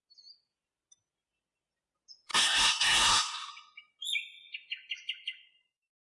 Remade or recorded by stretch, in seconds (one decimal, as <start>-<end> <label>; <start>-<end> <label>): 0.0-2.3 recorded; 2.3-3.5 remade; 3.5-6.2 recorded